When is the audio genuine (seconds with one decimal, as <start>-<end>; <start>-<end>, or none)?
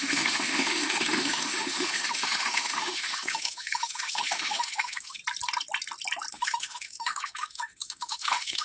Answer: 5.2-6.3